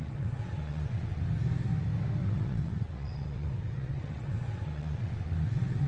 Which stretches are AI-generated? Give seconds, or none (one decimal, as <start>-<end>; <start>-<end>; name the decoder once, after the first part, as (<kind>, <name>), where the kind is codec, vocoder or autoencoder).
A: 0.0-1.2 (vocoder, WaveNeXt); 2.2-5.9